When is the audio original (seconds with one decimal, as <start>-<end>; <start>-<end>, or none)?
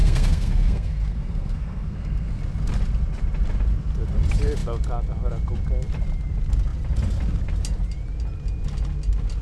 2.4-9.4